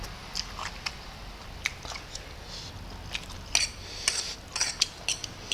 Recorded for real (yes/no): yes